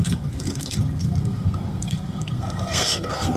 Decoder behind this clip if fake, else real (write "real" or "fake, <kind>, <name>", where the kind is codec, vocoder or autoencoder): fake, codec, SNAC